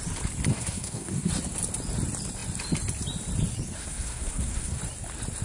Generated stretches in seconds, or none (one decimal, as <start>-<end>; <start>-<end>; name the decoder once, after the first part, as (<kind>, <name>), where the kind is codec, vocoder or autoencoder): 0.5-1.3 (codec, SNAC); 3.8-4.8